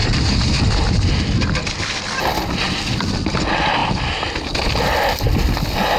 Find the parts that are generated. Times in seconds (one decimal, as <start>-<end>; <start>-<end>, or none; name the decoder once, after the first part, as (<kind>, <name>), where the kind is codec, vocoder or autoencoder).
none